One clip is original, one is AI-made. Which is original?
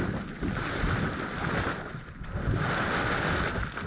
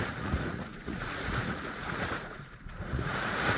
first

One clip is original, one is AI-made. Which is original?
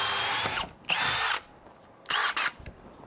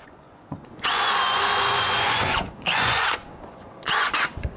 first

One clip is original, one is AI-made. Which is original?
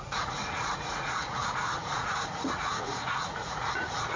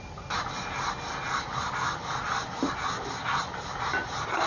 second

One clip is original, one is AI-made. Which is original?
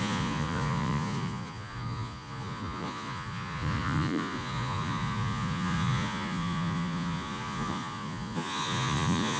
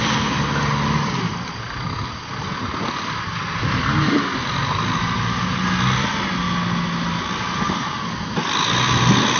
second